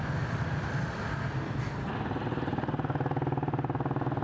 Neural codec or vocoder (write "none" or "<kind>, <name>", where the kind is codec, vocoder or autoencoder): none